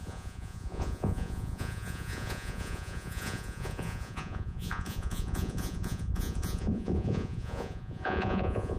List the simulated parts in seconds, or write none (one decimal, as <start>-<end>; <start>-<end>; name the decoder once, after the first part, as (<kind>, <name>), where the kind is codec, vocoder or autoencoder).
0.0-8.8 (vocoder, Vocos)